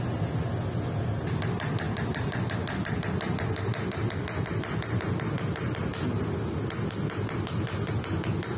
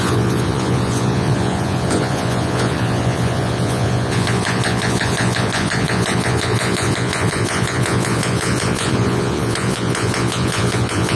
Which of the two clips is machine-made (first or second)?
second